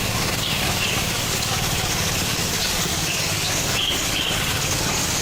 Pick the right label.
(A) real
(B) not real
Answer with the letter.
B